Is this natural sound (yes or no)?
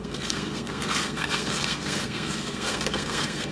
no